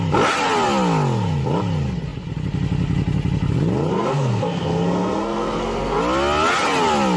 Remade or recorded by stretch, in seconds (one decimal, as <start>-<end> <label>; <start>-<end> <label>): 0.0-3.9 recorded; 3.9-6.0 remade; 6.0-7.2 recorded